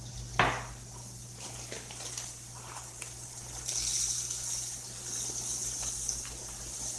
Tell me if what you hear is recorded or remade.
recorded